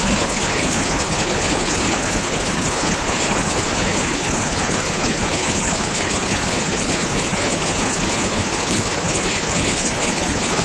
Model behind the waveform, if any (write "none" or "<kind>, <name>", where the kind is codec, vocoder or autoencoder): codec, HILCodec